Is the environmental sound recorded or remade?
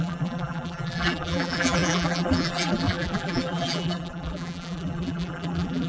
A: remade